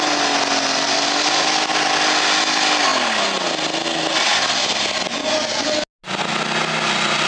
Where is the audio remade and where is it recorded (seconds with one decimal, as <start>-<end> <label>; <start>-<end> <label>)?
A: 0.0-7.3 recorded